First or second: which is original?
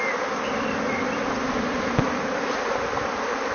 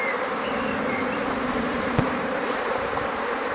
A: first